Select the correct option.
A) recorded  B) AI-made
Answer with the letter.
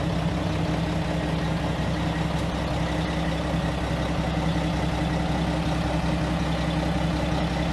A